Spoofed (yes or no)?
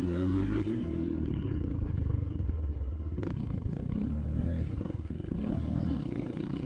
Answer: yes